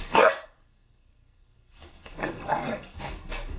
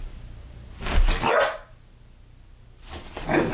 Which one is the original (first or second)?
second